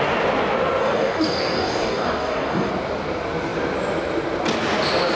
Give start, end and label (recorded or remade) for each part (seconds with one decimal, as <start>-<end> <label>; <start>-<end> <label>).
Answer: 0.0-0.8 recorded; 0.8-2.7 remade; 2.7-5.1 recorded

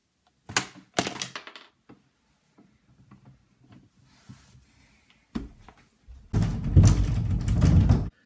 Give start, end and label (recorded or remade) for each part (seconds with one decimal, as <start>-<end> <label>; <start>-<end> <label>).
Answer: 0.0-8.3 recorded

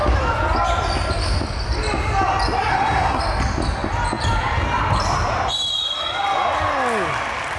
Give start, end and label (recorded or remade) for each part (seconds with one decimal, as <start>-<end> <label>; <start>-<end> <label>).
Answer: 0.0-2.7 recorded; 2.7-3.2 remade; 3.2-7.6 recorded

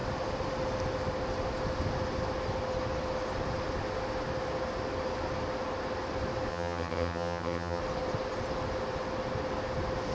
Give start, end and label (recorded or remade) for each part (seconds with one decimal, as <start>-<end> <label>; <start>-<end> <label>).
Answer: 0.0-6.5 recorded; 6.5-7.8 remade; 7.8-10.1 recorded

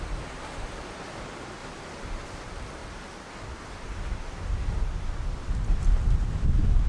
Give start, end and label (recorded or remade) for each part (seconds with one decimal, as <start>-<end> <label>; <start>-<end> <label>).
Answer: 0.0-6.9 recorded

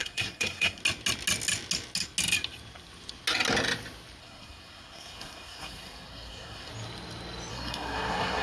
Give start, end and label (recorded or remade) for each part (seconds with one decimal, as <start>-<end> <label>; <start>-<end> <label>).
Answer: 0.0-0.8 remade; 0.8-4.2 recorded; 4.2-6.7 remade; 6.7-7.5 recorded; 7.5-8.4 remade

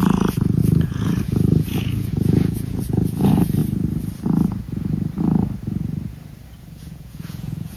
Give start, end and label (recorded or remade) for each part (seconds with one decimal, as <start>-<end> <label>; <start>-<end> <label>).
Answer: 0.0-3.6 remade; 3.6-6.8 recorded; 6.8-7.8 remade